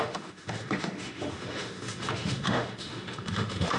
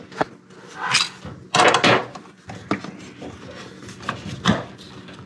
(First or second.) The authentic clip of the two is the second